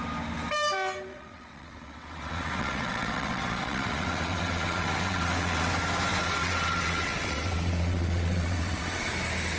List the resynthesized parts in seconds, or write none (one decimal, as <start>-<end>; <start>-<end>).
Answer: 1.1-5.7; 6.2-9.1